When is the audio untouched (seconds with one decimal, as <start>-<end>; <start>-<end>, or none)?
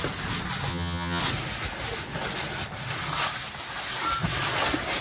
0.0-0.7; 1.2-5.0